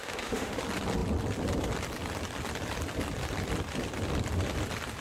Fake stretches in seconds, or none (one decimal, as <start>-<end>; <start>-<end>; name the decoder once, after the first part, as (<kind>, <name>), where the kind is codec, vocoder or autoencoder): 0.0-0.6 (autoencoder, DAC-VAE)